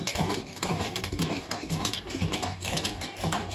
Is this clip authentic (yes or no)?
no